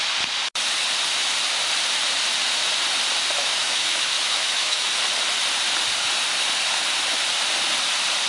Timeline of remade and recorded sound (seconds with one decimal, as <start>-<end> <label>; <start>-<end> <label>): 0.0-3.4 recorded; 3.4-4.9 remade; 4.9-8.3 recorded